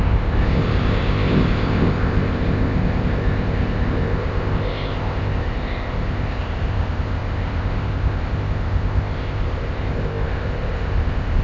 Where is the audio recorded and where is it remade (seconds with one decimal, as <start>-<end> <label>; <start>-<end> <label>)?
0.0-11.4 remade